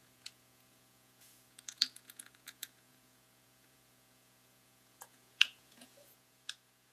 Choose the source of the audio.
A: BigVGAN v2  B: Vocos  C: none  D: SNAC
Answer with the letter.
B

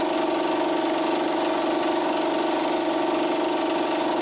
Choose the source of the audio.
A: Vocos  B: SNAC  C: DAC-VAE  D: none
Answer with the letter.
D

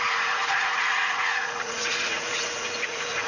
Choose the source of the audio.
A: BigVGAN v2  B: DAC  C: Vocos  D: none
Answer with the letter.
C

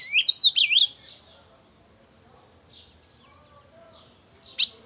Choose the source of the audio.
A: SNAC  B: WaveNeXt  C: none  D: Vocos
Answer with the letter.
C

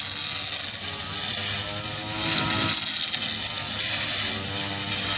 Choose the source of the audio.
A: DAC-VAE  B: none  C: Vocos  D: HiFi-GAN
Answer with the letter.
B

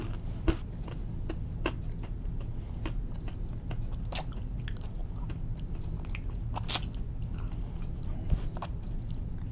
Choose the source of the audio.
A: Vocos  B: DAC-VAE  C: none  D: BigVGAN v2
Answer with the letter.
C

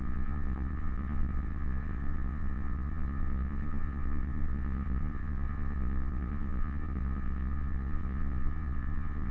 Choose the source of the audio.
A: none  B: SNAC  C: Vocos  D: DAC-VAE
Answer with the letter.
C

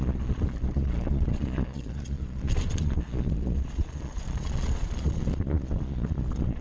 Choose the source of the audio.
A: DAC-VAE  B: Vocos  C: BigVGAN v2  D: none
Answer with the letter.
B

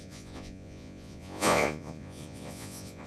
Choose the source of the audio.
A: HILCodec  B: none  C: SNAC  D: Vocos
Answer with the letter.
D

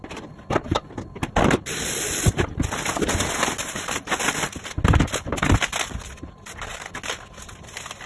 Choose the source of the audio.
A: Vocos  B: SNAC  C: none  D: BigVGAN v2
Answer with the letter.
C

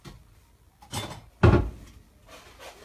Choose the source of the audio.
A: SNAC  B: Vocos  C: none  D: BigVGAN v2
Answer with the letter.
C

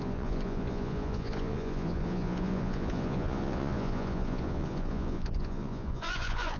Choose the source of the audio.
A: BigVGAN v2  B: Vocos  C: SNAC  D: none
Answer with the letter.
B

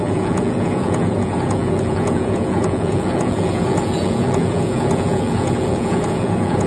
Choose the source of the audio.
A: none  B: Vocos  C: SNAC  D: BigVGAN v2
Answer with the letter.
B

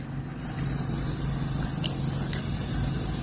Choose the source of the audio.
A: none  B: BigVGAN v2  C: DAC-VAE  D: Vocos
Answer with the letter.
A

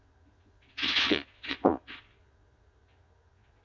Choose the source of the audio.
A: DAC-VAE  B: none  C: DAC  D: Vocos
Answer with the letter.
D